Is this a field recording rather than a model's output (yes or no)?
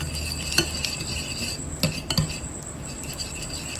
yes